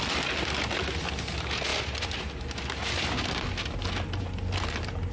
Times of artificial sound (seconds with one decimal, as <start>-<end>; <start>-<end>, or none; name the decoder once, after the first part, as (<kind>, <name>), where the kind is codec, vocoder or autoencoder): none